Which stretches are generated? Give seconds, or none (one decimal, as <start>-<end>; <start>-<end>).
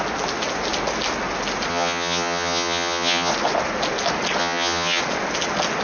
1.7-3.3; 4.4-5.0